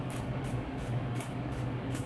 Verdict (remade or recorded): remade